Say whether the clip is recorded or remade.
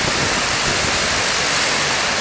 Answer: recorded